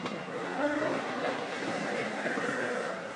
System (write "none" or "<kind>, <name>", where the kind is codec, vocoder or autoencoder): codec, SNAC